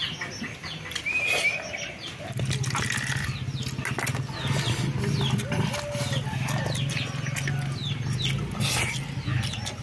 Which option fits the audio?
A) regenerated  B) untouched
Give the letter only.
B